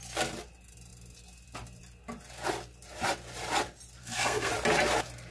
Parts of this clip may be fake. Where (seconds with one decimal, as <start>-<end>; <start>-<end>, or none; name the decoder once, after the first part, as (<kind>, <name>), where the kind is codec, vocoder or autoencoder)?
4.0-4.5 (codec, SNAC)